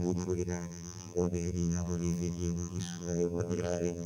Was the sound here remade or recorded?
remade